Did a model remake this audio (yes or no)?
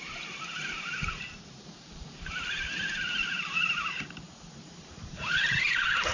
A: yes